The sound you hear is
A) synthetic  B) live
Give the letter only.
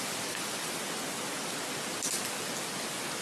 B